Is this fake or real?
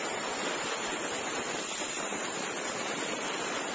real